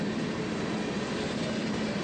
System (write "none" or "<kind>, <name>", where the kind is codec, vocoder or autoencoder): none